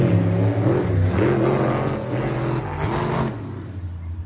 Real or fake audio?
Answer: real